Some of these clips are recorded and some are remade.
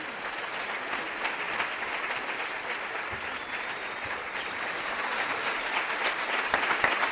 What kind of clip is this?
recorded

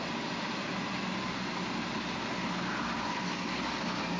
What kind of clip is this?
recorded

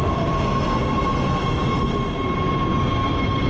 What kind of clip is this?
recorded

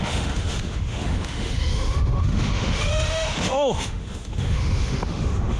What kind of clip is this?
remade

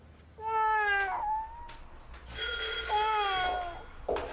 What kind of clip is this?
recorded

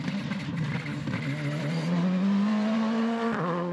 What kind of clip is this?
remade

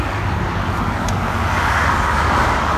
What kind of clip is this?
remade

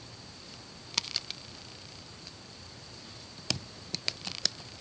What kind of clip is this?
remade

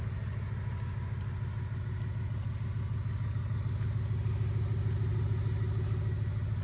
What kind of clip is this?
recorded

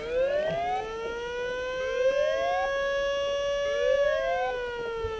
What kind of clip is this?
recorded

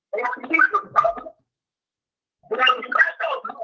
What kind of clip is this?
remade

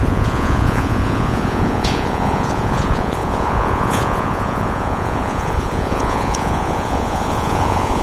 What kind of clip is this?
remade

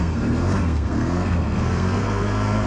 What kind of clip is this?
remade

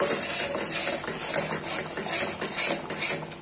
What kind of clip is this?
recorded